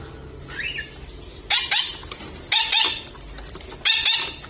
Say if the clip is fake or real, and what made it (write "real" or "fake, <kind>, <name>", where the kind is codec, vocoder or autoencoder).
real